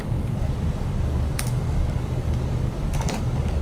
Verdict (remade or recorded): remade